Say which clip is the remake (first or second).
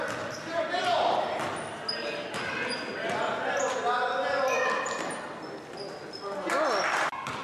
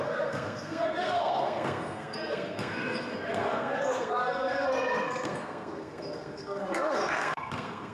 second